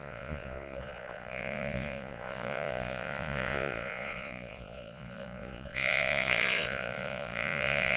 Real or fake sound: fake